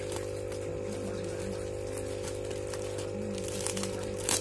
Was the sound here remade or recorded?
recorded